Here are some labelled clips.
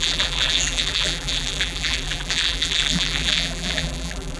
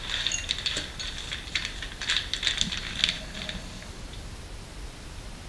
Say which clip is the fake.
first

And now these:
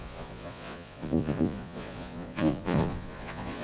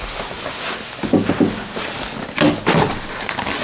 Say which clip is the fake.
first